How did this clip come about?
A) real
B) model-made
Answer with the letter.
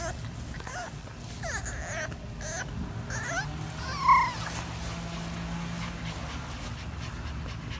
A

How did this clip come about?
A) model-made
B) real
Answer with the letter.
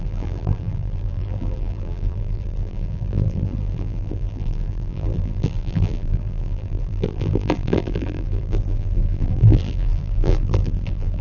A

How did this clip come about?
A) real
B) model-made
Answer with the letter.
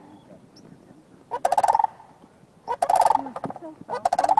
A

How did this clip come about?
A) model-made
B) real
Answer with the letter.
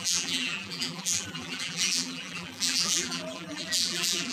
A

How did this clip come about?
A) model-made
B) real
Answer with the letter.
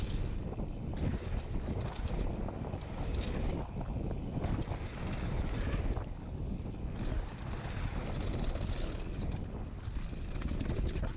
B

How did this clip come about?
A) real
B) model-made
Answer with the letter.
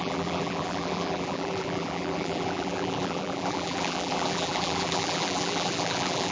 B